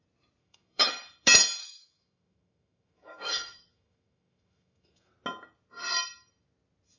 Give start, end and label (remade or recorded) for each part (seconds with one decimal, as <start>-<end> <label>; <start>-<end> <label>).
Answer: 0.0-0.4 recorded; 0.4-0.9 remade; 0.9-1.6 recorded; 1.6-5.1 remade; 5.1-7.0 recorded